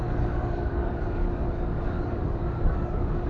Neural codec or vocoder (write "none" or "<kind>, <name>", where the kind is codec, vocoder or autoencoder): codec, DAC